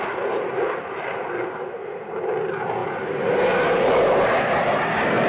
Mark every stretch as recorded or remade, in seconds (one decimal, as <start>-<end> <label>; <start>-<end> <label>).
0.0-5.3 recorded